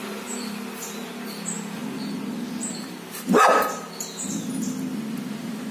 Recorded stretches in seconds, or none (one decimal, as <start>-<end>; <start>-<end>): 0.0-5.7